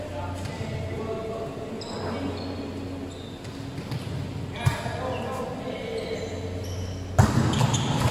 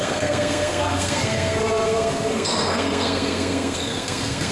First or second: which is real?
first